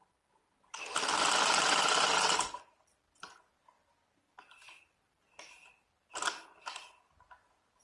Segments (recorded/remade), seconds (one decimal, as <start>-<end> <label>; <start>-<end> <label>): 0.0-3.3 remade; 3.3-7.8 recorded